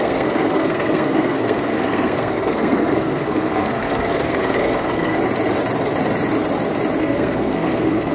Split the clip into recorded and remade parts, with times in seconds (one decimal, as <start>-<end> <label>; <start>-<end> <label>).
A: 0.0-5.2 remade; 5.2-7.0 recorded; 7.0-8.1 remade